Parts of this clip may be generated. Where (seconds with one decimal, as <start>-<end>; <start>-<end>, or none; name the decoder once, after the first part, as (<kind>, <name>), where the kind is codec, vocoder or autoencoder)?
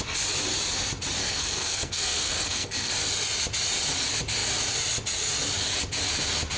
1.2-2.9 (codec, SNAC)